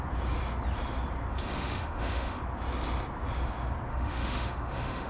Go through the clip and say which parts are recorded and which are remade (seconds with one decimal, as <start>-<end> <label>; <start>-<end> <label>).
0.0-1.3 recorded; 1.3-2.4 remade; 2.4-3.9 recorded; 3.9-5.1 remade